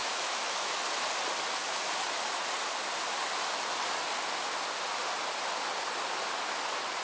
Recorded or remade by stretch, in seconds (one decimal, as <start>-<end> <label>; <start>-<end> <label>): 0.0-0.8 remade; 0.8-7.0 recorded